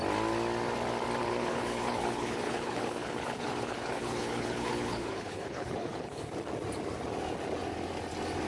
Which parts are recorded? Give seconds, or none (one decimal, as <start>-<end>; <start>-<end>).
0.0-1.2; 6.3-8.5